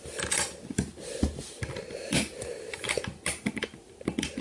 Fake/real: real